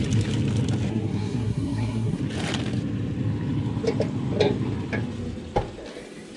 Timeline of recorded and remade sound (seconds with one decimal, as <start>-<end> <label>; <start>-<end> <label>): 0.0-0.9 recorded; 0.9-2.2 remade; 2.2-6.4 recorded